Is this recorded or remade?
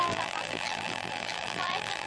remade